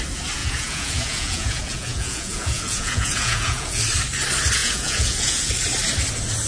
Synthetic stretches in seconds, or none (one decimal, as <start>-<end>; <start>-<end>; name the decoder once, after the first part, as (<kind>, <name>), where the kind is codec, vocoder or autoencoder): 0.4-3.8 (vocoder, Vocos); 4.6-5.5